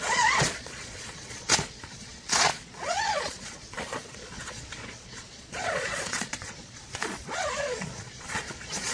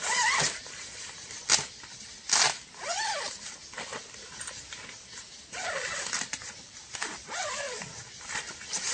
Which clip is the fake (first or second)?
first